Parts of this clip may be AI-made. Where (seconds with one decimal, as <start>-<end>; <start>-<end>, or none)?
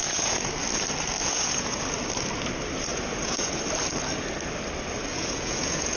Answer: 0.0-0.5; 1.2-1.8; 2.9-3.6; 5.1-6.0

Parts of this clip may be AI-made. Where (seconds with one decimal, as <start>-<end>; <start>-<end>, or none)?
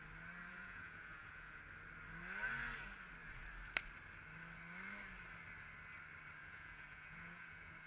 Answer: 0.5-1.6; 6.4-7.9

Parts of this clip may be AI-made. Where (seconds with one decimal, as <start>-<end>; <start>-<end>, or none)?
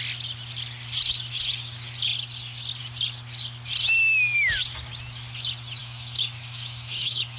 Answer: 5.8-7.4